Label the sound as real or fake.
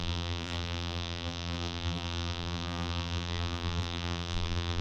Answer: fake